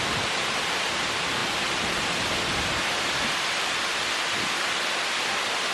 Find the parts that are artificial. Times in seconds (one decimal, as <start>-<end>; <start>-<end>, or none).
none